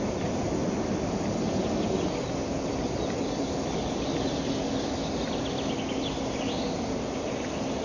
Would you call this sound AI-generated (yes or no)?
no